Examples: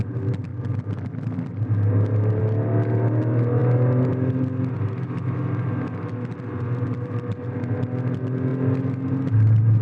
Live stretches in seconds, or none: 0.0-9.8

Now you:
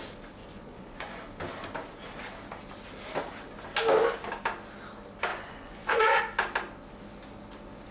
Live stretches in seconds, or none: 0.0-0.4; 1.2-5.3; 6.2-7.9

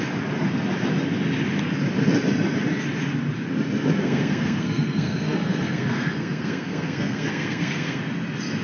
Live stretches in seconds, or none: 0.0-4.0; 8.0-8.6

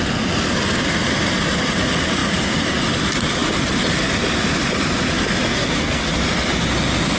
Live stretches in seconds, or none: 0.0-5.5; 6.1-7.2

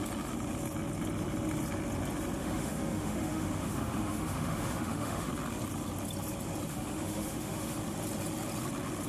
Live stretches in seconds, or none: 0.0-2.4; 5.3-6.7; 7.8-9.1

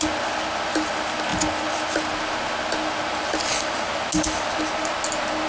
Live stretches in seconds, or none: 0.0-5.5

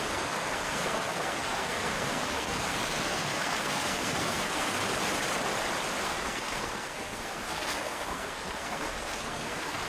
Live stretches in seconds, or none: 4.8-6.0